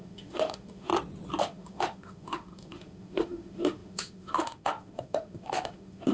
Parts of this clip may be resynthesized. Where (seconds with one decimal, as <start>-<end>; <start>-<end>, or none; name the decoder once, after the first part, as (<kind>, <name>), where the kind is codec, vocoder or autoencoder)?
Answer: 0.0-0.9 (autoencoder, DAC-VAE); 1.4-6.1